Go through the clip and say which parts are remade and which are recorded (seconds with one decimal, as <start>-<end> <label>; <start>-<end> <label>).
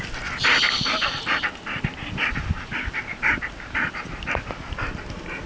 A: 0.0-5.5 recorded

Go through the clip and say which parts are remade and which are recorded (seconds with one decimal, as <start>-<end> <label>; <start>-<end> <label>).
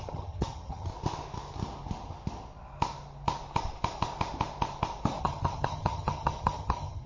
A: 0.0-0.9 remade; 0.9-5.2 recorded; 5.2-7.1 remade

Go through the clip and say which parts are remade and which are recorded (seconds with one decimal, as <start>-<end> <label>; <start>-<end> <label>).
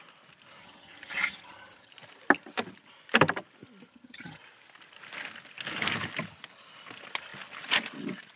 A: 0.0-0.6 recorded; 0.6-1.9 remade; 1.9-3.9 recorded; 3.9-4.4 remade; 4.4-8.4 recorded